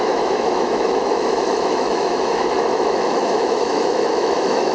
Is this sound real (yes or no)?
no